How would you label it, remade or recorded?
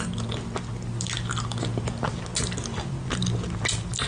recorded